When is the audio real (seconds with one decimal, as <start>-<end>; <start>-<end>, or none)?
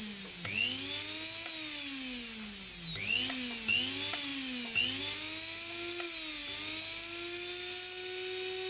0.0-8.7